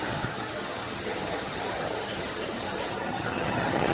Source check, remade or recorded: remade